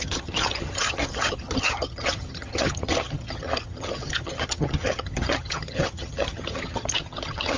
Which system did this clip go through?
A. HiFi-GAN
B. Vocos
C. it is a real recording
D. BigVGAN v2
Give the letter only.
A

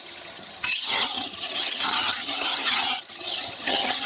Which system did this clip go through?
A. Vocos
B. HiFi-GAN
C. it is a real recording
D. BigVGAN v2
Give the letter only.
B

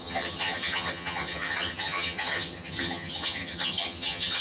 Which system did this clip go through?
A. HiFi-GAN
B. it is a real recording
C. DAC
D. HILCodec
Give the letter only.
A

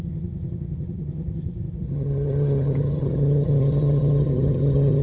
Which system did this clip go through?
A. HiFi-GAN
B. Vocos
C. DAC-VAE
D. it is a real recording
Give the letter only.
A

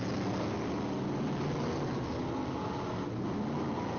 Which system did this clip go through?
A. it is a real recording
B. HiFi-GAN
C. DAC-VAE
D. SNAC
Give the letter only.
A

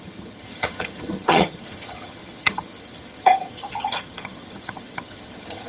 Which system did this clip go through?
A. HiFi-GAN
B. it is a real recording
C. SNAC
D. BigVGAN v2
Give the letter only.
A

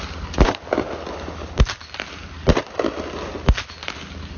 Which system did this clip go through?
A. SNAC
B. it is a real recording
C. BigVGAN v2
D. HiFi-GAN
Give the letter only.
B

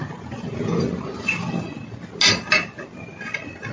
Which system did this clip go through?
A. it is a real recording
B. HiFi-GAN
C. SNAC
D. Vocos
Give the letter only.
A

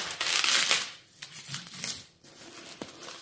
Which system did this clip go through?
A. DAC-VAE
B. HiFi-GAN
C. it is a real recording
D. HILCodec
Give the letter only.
C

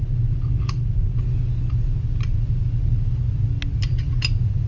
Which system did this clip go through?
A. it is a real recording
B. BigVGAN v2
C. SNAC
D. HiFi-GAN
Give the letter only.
A